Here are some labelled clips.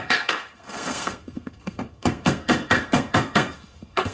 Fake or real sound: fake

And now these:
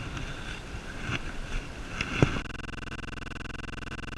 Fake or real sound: real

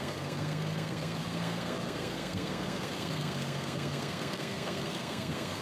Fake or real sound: fake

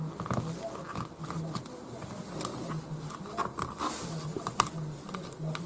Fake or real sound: real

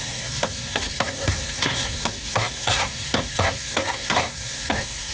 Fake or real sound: fake